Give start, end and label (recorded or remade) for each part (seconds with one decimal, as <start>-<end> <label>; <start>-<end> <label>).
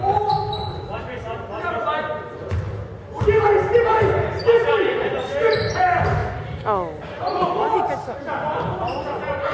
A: 0.0-9.5 recorded